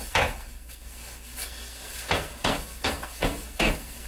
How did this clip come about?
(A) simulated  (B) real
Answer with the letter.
A